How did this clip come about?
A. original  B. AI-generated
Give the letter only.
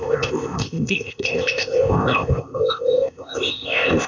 B